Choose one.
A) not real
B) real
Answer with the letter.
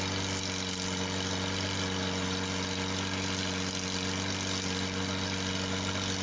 B